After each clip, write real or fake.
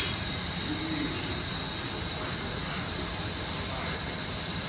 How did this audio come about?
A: real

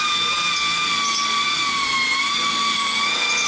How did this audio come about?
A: real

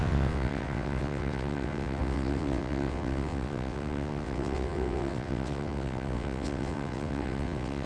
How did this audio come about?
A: fake